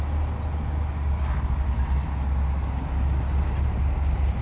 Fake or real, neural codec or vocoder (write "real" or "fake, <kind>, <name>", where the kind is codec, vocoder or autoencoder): real